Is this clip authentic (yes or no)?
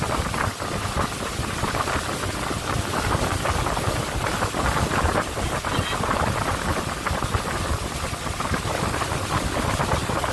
yes